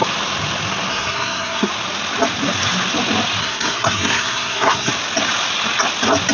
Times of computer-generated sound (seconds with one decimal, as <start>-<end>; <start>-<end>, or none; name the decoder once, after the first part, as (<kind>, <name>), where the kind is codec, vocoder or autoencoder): 0.9-1.7 (codec, SNAC); 3.4-4.9